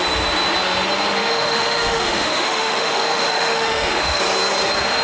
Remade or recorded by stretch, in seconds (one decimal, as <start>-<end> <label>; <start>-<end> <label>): 0.0-1.2 recorded; 1.2-4.2 remade; 4.2-5.0 recorded